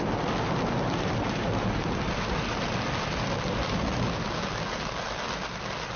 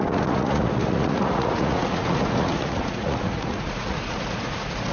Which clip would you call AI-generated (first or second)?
second